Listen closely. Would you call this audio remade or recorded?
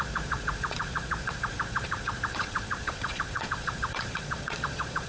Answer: remade